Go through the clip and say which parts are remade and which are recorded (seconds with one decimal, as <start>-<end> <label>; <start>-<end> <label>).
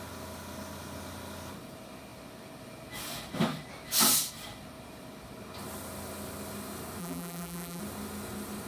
0.0-7.0 recorded; 7.0-7.8 remade; 7.8-8.7 recorded